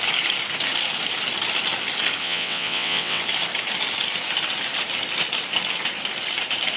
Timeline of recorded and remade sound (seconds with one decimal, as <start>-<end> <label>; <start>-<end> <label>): 0.0-2.2 recorded; 2.2-3.2 remade; 3.2-6.8 recorded